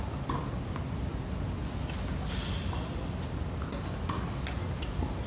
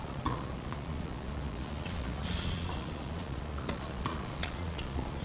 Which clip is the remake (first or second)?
second